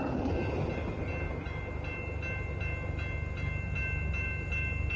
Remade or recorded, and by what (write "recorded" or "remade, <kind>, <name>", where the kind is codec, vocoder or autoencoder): recorded